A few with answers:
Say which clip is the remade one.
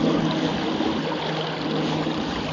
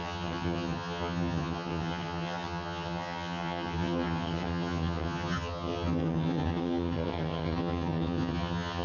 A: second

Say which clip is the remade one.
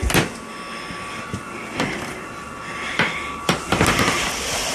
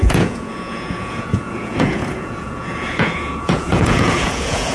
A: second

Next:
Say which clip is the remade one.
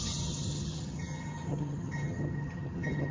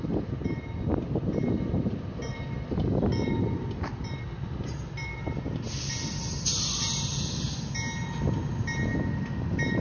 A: first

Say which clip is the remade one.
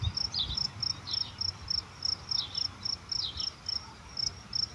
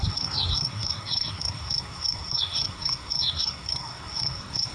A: second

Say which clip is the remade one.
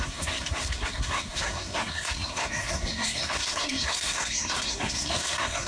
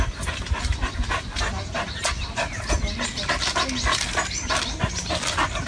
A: first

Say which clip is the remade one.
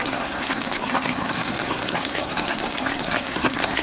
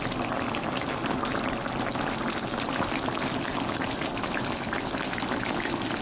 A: first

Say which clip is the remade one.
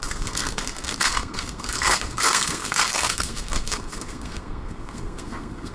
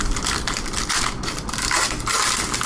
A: first